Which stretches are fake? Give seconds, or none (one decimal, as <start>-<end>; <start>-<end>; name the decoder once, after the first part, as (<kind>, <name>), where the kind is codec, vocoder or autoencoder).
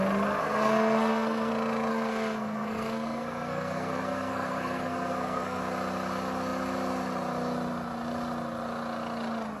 0.4-1.5 (codec, SNAC); 1.9-5.6